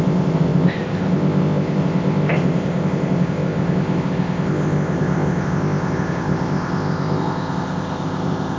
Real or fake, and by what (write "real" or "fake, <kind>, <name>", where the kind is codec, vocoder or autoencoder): fake, codec, ZipCodec